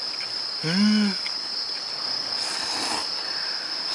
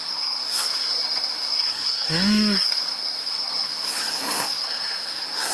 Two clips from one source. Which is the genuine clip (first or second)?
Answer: first